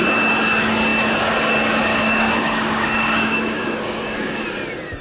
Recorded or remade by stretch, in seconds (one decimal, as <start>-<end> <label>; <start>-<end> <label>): 0.0-1.9 recorded; 1.9-4.4 remade; 4.4-5.0 recorded